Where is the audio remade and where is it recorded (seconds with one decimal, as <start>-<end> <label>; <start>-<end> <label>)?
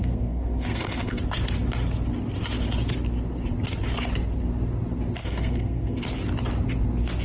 0.0-1.2 remade; 1.2-5.2 recorded; 5.2-6.0 remade; 6.0-7.2 recorded